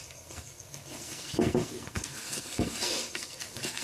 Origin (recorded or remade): remade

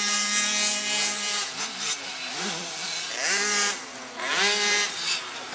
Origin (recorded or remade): recorded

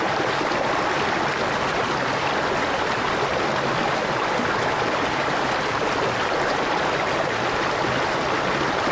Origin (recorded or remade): recorded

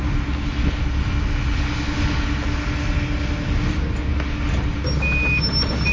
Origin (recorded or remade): recorded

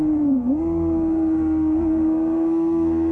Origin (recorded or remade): remade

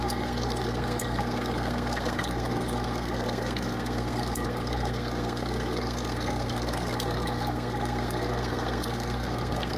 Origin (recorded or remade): remade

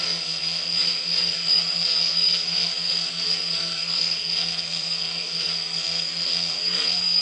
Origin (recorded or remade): remade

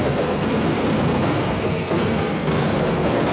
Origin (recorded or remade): remade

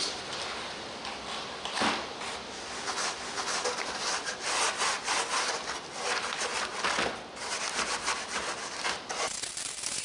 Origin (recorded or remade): recorded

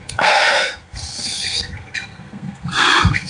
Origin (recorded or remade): remade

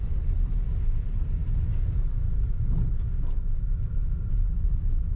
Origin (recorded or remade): recorded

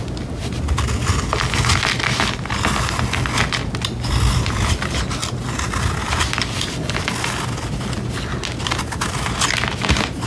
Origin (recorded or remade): recorded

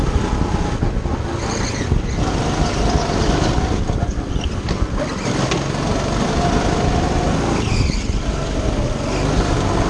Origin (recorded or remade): recorded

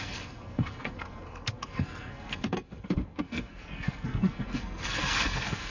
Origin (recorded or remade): remade